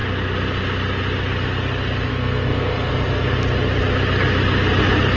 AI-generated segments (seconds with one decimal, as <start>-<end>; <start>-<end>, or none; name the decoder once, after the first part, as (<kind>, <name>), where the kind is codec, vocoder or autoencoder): 2.1-2.9 (codec, SNAC)